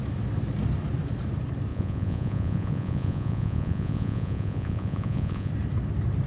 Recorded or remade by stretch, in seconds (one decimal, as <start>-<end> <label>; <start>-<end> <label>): 0.0-1.7 recorded; 1.7-5.5 remade; 5.5-6.3 recorded